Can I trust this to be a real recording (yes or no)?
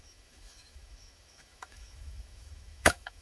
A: no